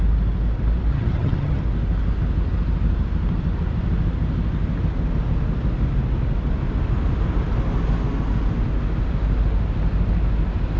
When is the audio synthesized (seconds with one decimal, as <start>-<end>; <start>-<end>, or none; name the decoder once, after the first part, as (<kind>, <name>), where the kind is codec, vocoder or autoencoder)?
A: 0.9-1.6 (vocoder, HiFi-GAN)